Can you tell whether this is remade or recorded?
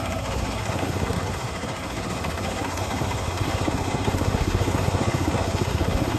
remade